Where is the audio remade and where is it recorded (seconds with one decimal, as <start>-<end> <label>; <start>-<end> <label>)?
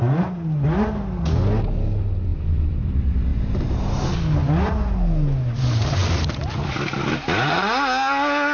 0.0-2.3 recorded; 2.3-2.9 remade; 2.9-3.3 recorded; 3.3-4.1 remade; 4.1-6.0 recorded; 6.0-7.5 remade; 7.5-8.5 recorded